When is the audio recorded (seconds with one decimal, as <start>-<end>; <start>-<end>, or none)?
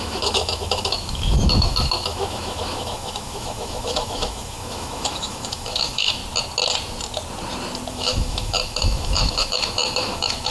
6.2-7.9